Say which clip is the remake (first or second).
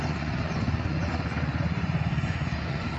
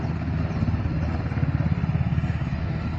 first